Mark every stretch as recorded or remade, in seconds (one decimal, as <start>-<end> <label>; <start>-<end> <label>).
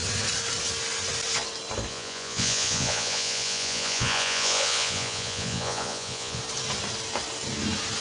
0.0-1.9 recorded; 1.9-6.4 remade; 6.4-8.0 recorded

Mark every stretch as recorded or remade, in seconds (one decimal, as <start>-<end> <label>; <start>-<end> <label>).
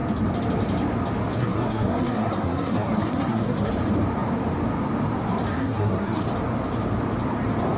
0.0-1.4 recorded; 1.4-3.7 remade; 3.7-5.5 recorded; 5.5-6.2 remade; 6.2-7.8 recorded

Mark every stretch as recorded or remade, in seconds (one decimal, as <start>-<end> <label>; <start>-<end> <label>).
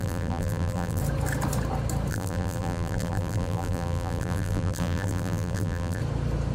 0.0-1.0 remade; 1.0-2.1 recorded; 2.1-6.0 remade; 6.0-6.5 recorded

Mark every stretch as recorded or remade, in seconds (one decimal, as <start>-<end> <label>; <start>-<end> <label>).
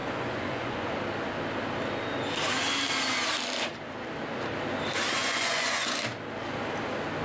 0.0-0.9 remade; 0.9-5.2 recorded; 5.2-6.0 remade; 6.0-7.2 recorded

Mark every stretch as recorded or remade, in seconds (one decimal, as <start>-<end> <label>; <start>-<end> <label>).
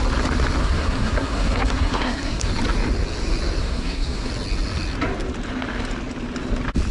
0.0-0.6 recorded; 0.6-2.5 remade; 2.5-3.6 recorded; 3.6-4.3 remade; 4.3-6.9 recorded